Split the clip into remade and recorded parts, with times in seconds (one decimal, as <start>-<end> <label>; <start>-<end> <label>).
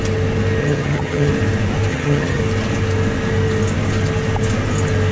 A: 0.0-0.6 recorded; 0.6-1.3 remade; 1.3-1.9 recorded; 1.9-2.4 remade; 2.4-5.1 recorded